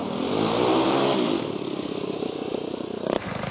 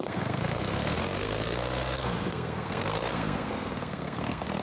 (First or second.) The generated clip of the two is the second